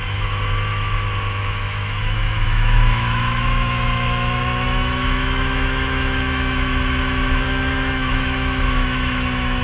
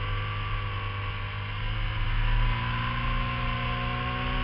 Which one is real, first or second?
second